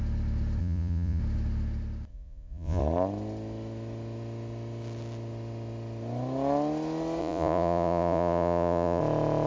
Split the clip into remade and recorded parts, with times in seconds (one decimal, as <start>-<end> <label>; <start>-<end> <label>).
0.0-0.6 recorded; 0.6-1.2 remade; 1.2-2.1 recorded; 2.1-2.8 remade; 2.8-7.2 recorded; 7.2-9.0 remade; 9.0-9.5 recorded